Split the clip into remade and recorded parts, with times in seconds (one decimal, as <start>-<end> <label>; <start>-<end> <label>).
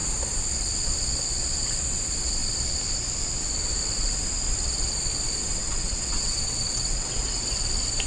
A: 0.0-5.6 recorded; 5.6-7.5 remade; 7.5-8.1 recorded